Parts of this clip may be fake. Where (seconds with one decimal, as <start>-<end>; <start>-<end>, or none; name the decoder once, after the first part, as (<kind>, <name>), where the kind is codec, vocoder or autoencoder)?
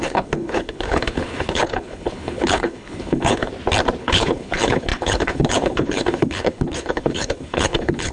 0.0-3.5 (codec, HILCodec); 4.0-8.1